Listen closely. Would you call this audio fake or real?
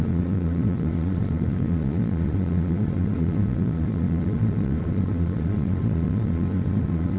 fake